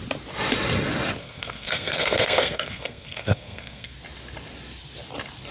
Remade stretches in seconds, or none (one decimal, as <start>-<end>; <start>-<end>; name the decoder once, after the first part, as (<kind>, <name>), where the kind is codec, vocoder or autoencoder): 1.2-3.9 (codec, SNAC)